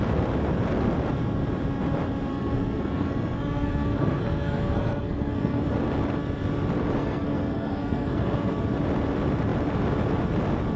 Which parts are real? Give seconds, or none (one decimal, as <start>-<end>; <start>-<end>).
0.0-2.3; 5.6-7.0; 8.6-10.8